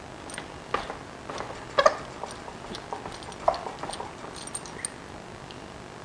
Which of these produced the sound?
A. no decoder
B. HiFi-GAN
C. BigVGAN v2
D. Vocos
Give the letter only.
A